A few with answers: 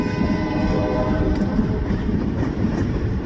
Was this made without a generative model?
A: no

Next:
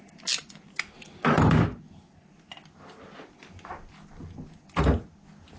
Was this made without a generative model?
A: yes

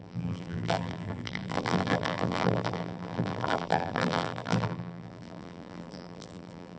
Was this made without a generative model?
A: no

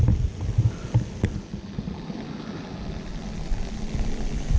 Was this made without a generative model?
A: yes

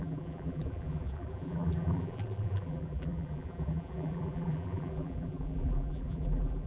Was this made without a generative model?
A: no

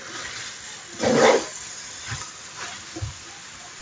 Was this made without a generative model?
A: yes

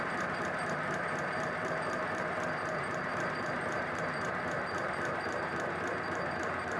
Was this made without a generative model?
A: no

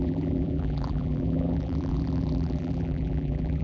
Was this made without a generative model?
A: no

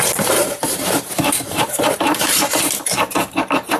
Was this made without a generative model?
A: no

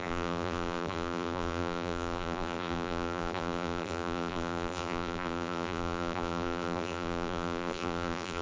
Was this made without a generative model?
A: no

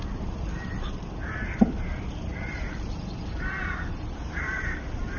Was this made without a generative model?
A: no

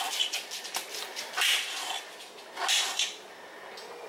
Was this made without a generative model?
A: yes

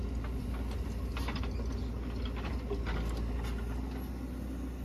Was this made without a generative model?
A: yes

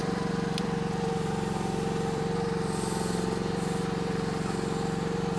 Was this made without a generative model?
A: no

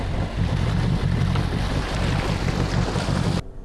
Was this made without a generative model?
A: yes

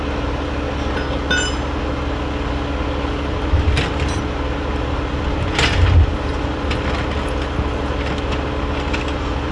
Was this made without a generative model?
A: yes